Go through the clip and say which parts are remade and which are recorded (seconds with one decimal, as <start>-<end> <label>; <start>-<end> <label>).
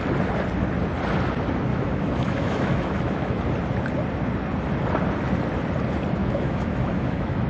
0.0-1.7 recorded; 1.7-3.4 remade; 3.4-6.2 recorded; 6.2-7.5 remade